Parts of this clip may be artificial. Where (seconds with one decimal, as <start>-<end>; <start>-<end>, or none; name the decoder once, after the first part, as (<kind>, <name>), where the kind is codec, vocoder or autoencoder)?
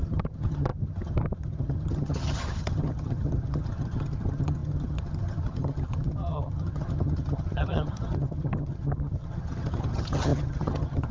0.0-11.1 (vocoder, HiFi-GAN)